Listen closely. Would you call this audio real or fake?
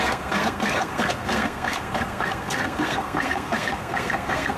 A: fake